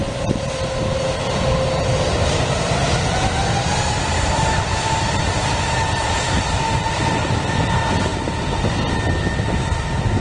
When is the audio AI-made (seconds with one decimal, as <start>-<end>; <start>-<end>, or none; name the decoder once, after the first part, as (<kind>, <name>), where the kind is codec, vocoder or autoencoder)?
3.4-7.6 (vocoder, BigVGAN v2)